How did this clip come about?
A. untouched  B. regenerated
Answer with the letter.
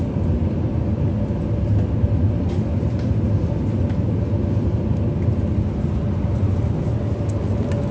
A